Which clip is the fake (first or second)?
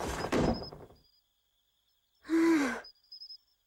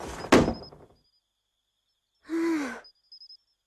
first